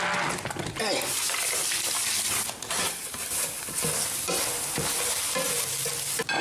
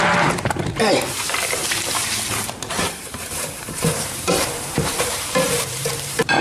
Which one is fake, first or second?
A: second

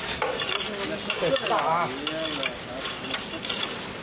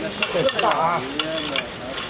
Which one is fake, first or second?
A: second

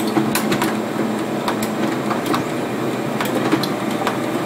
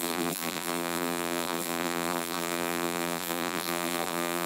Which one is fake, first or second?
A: second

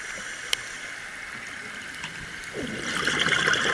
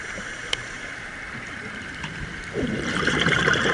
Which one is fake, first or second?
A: second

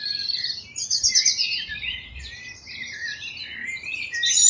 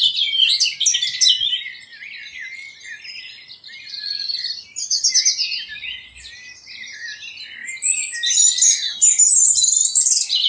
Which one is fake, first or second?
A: first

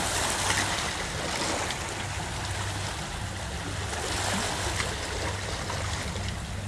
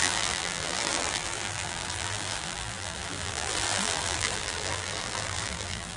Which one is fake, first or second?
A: second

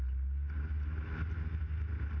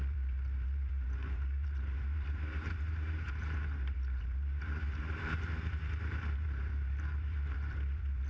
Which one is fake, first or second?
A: second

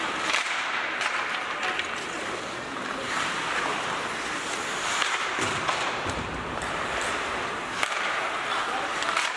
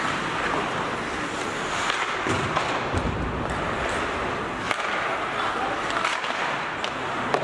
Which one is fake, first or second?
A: first